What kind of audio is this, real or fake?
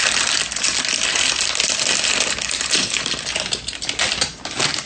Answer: real